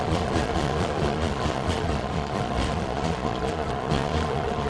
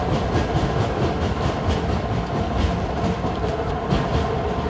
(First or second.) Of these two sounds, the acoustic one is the second